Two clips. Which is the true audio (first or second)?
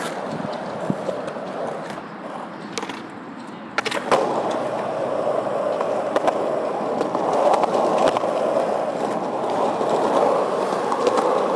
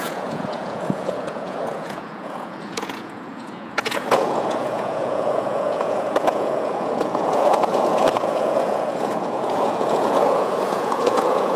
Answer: first